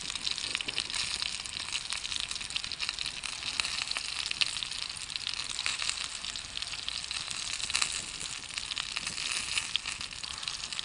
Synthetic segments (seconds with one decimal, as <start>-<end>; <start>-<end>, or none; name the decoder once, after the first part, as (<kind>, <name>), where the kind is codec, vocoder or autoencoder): none